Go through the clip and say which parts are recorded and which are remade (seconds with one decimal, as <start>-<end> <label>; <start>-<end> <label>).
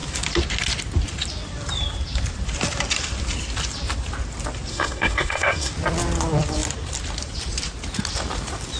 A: 0.0-4.7 recorded; 4.7-5.7 remade; 5.7-8.8 recorded